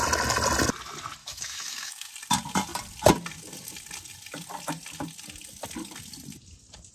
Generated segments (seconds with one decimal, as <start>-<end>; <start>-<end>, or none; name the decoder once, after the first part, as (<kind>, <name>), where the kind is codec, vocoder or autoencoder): 1.2-2.1 (autoencoder, DAC-VAE)